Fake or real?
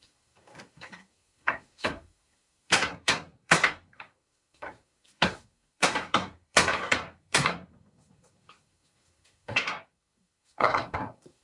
fake